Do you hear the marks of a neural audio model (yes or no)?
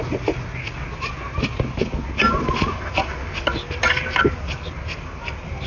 no